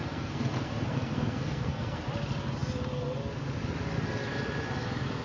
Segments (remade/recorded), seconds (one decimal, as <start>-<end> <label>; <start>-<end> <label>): 0.0-2.0 remade; 2.0-5.2 recorded